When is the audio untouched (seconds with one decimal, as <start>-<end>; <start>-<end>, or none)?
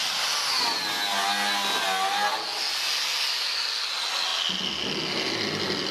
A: 0.0-5.9